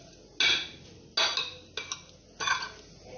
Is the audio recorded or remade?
recorded